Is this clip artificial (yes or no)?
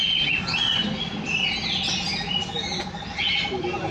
no